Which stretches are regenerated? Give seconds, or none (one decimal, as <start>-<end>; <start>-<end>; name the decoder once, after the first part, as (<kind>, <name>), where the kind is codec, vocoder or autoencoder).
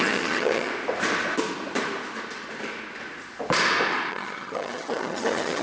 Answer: 0.0-0.7 (vocoder, HiFi-GAN); 4.1-5.6